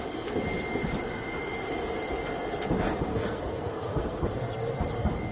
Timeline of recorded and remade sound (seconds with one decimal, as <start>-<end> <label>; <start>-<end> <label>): 0.0-3.1 recorded; 3.1-4.4 remade; 4.4-5.3 recorded